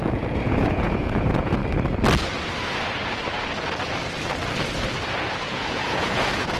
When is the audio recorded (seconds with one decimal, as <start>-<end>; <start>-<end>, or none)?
1.6-5.3